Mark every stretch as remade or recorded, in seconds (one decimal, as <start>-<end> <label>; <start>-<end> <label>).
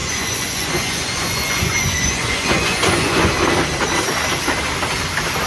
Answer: 0.0-3.3 remade; 3.3-5.5 recorded